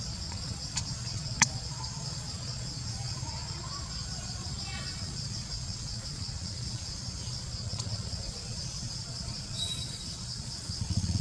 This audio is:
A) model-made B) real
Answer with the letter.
A